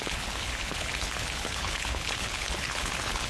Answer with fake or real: fake